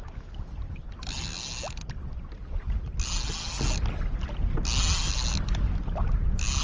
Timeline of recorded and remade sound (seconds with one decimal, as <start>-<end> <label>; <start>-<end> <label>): 0.0-6.6 recorded